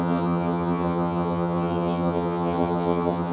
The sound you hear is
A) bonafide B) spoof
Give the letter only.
B